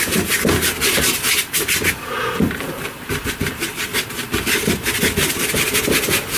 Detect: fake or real real